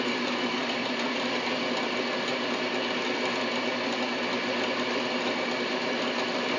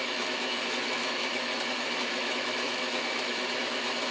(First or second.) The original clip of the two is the first